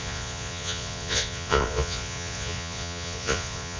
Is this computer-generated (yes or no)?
yes